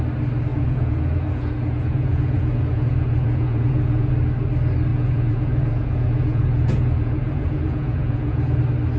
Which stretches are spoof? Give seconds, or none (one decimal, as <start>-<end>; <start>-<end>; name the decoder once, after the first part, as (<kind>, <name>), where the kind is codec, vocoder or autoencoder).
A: 0.5-4.1 (vocoder, Vocos); 4.9-8.6